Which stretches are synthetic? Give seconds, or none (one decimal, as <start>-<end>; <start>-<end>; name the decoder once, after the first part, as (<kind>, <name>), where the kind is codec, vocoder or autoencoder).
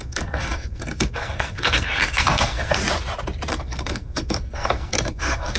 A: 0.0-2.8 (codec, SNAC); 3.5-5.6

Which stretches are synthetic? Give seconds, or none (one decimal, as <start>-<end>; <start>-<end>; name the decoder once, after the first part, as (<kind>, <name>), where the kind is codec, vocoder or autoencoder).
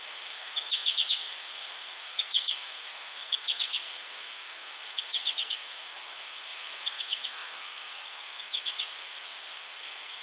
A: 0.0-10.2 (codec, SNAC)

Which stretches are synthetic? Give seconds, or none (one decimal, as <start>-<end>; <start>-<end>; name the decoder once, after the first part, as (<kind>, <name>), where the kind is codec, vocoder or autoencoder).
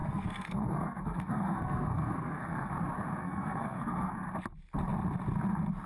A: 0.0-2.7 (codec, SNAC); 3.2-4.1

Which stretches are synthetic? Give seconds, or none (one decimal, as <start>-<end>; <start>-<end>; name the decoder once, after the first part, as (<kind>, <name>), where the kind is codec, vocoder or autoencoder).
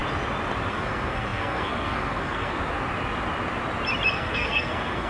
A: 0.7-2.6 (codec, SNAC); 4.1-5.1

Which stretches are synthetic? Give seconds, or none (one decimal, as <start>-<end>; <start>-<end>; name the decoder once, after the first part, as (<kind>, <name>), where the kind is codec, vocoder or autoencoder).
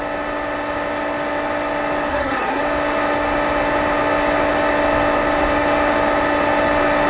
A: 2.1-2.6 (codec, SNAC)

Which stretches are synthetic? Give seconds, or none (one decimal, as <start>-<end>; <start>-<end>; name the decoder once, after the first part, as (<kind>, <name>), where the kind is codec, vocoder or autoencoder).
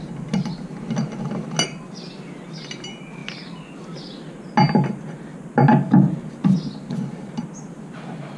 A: none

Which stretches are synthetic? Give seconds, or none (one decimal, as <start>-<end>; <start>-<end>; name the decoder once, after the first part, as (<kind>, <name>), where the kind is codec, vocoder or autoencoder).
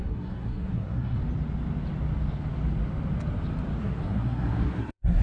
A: 0.0-1.2 (codec, SNAC); 3.8-5.2